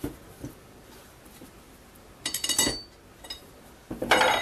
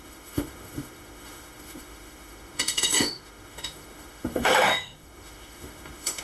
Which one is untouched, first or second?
first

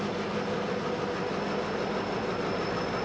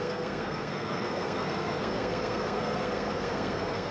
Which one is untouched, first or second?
first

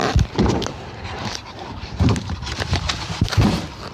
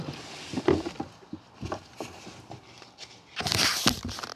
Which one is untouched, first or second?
second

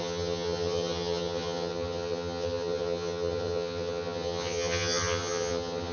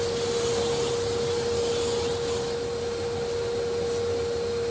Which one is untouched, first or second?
second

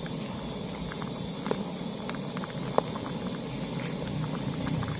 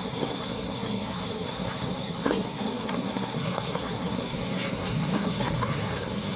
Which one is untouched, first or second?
first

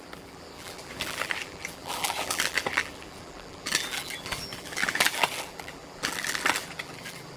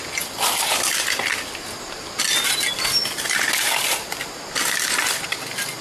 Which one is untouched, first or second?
second